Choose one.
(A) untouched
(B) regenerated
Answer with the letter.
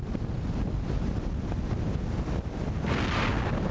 A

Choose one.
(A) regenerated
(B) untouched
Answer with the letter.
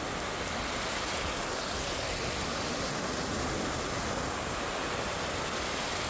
B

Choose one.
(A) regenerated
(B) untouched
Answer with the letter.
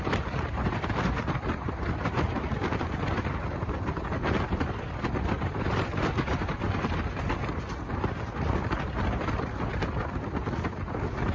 A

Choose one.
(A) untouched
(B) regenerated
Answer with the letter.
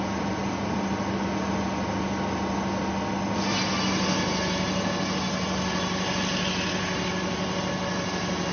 A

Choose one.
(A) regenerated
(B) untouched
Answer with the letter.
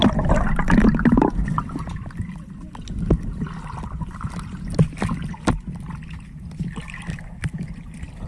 B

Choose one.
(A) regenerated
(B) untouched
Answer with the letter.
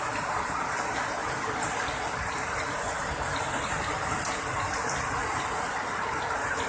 B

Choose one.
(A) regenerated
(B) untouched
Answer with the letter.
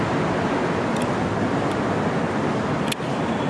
B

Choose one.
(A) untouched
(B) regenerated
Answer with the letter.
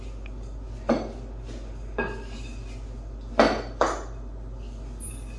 A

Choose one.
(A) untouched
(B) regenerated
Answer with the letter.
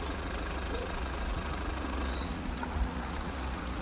B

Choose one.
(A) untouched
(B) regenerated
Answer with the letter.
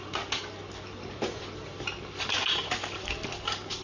A